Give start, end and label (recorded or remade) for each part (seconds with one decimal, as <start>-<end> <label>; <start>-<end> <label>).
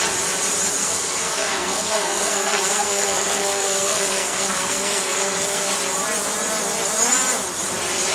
0.0-0.8 recorded; 0.8-5.7 remade; 5.7-8.1 recorded